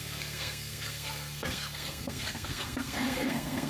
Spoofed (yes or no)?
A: yes